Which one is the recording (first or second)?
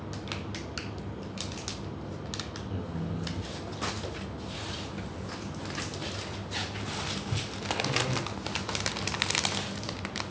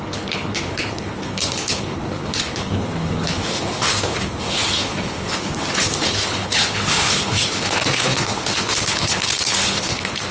first